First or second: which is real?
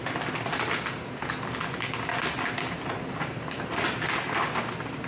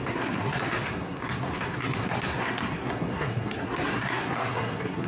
first